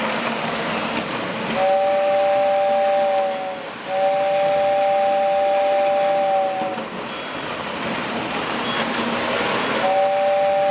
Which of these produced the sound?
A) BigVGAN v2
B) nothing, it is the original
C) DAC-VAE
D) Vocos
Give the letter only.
B